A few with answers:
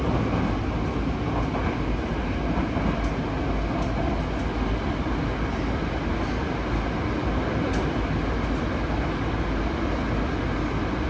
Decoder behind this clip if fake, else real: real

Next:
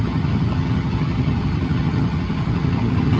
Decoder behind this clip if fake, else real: fake, vocoder, HiFi-GAN